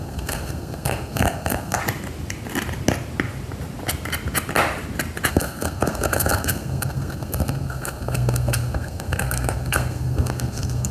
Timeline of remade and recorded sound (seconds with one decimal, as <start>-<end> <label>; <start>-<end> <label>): 0.0-1.8 remade; 1.8-5.3 recorded; 5.3-10.9 remade